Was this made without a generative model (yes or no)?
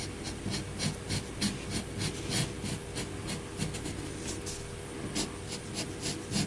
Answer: yes